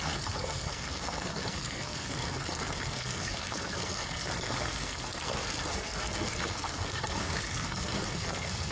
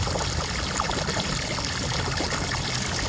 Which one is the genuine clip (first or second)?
second